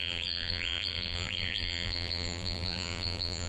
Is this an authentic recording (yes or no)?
no